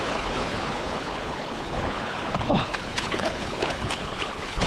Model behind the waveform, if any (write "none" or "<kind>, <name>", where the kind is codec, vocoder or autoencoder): codec, HILCodec